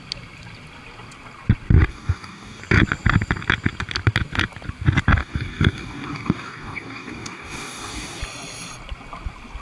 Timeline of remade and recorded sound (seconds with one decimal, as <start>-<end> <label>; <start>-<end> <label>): 0.0-1.9 recorded; 1.9-2.6 remade; 2.6-5.2 recorded; 5.2-8.2 remade; 8.2-9.6 recorded